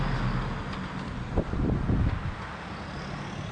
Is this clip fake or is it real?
real